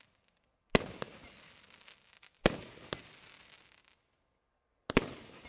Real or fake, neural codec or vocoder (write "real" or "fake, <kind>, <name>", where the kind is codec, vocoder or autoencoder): real